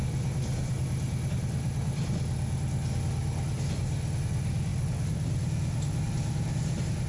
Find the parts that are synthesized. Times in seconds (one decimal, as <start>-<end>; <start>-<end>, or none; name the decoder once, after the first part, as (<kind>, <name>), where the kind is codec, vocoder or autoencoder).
4.7-7.1 (vocoder, BigVGAN v2)